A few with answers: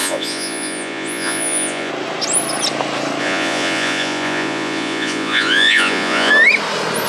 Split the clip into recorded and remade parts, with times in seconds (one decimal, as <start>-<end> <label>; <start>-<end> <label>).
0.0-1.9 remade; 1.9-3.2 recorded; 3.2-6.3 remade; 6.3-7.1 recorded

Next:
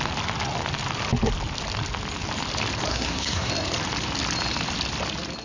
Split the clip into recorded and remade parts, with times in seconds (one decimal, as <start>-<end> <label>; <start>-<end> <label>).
0.0-2.9 recorded; 2.9-3.5 remade; 3.5-5.4 recorded

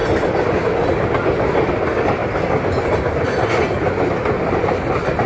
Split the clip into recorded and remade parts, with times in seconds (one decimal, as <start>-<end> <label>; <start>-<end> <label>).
0.0-5.3 recorded

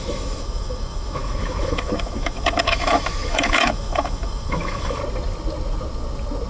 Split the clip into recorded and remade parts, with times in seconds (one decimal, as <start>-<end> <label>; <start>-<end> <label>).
0.0-5.0 remade; 5.0-6.5 recorded